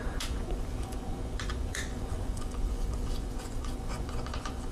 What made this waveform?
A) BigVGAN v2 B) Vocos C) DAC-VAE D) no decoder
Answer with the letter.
B